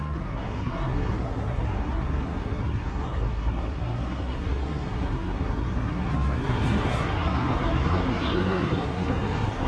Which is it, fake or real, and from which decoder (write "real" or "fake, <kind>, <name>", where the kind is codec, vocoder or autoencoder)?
fake, codec, SNAC